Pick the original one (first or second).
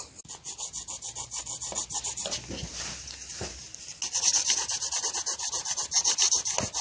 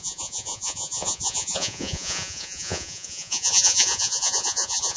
first